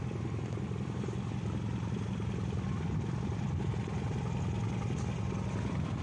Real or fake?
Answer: real